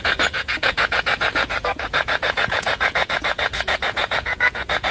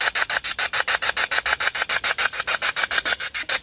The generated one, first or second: first